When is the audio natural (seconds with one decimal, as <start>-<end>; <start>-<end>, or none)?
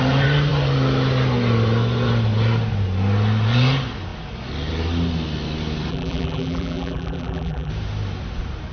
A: 0.0-5.9; 7.7-8.7